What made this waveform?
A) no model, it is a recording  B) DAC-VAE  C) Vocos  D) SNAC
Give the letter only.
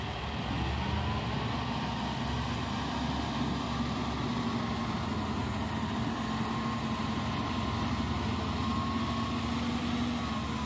A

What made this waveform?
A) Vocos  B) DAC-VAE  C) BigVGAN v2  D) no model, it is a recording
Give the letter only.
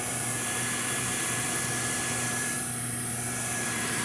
C